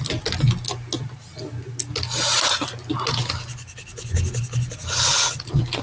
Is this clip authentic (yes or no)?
yes